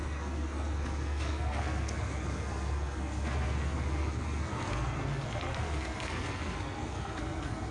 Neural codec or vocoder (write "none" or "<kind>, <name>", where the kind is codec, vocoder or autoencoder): codec, SNAC